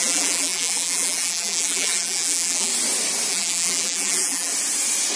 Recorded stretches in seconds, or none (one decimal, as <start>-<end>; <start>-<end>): 2.7-3.3; 4.5-5.2